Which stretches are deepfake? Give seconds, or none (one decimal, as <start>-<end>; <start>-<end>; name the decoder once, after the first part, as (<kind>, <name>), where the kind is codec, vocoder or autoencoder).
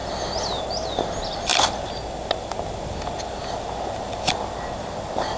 none